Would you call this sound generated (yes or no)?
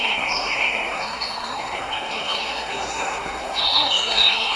yes